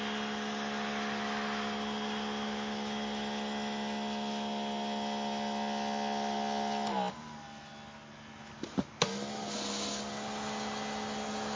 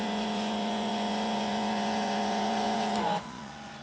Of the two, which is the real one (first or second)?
first